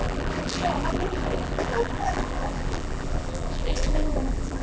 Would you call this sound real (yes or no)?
no